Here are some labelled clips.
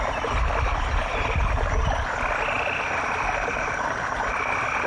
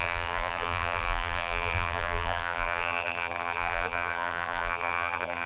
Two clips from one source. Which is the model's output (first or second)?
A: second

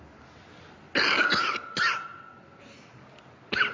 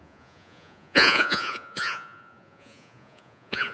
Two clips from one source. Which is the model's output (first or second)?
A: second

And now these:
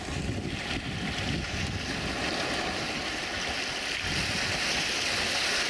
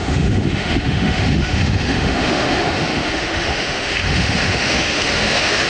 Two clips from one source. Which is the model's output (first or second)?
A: second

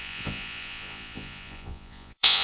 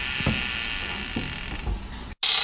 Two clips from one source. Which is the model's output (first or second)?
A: first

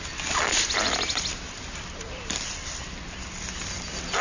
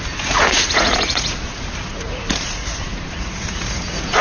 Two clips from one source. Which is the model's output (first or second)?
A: second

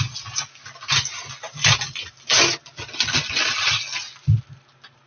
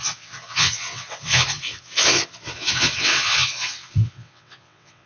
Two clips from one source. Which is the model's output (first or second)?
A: second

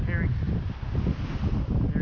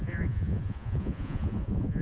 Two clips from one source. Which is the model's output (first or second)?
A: second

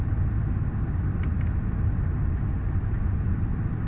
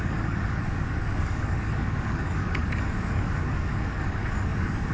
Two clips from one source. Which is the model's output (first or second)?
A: second